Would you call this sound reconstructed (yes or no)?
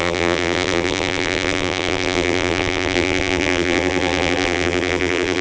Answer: yes